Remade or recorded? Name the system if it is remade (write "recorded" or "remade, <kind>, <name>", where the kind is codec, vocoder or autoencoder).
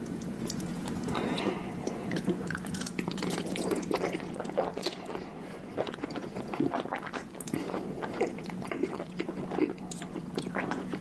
remade, vocoder, Vocos